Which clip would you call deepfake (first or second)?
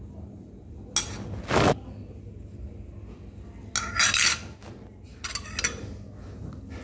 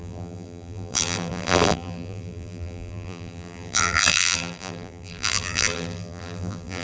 second